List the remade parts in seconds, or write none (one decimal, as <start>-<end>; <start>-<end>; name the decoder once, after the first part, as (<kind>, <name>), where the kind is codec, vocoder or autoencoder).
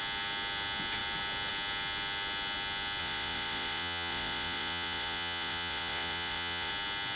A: 3.0-6.7 (vocoder, Vocos)